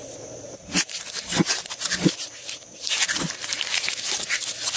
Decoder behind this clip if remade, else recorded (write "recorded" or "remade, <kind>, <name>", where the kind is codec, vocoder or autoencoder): remade, vocoder, BigVGAN v2